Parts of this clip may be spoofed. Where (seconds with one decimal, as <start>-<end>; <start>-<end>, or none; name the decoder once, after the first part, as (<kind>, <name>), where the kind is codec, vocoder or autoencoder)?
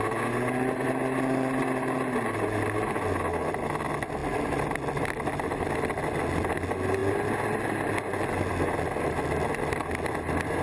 none